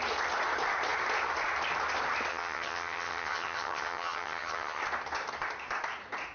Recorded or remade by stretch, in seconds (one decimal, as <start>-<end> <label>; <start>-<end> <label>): 0.0-2.3 recorded; 2.3-4.8 remade; 4.8-6.3 recorded